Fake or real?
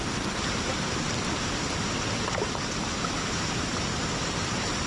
fake